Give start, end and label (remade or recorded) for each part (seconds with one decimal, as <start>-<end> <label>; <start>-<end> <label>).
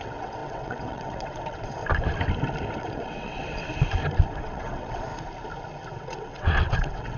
0.0-1.8 remade; 1.8-2.8 recorded; 2.8-3.6 remade; 3.6-4.4 recorded; 4.4-5.1 remade; 5.1-5.9 recorded; 5.9-7.2 remade